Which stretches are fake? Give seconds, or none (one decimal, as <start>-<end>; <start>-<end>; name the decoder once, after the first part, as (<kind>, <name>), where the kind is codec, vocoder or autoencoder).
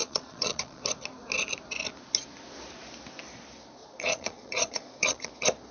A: 0.0-0.8 (vocoder, Vocos); 3.8-5.3